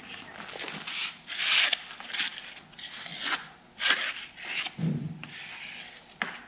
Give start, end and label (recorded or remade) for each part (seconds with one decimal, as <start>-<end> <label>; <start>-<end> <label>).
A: 0.0-6.5 recorded